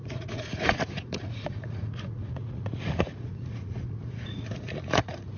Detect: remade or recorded remade